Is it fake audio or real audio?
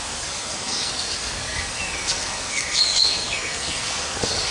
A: fake